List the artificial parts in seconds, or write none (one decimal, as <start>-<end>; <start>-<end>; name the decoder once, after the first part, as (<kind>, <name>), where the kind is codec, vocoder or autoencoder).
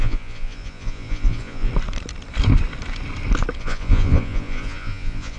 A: 0.0-1.7 (vocoder, Vocos); 3.6-5.4